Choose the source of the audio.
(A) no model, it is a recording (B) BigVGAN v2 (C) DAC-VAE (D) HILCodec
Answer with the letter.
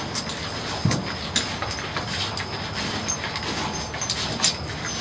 A